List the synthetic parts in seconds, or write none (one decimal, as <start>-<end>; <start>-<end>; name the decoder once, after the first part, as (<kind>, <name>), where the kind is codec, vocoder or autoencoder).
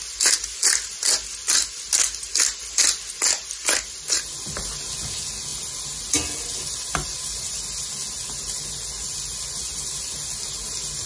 none